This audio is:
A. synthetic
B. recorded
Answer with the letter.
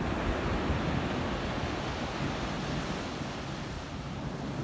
B